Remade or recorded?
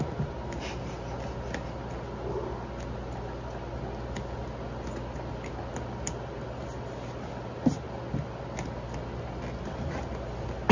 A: recorded